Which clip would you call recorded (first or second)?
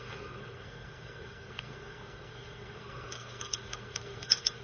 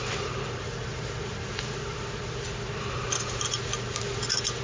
second